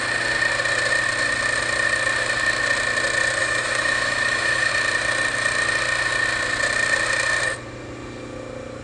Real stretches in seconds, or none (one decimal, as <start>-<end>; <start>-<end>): 0.0-3.4; 4.7-8.8